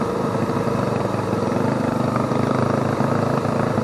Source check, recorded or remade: recorded